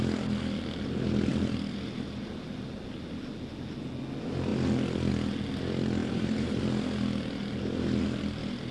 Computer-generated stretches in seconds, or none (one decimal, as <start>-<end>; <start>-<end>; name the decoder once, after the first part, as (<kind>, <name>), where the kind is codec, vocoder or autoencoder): 6.0-6.6 (vocoder, BigVGAN v2)